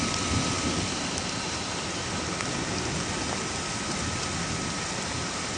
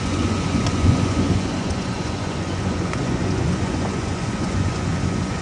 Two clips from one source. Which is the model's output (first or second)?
second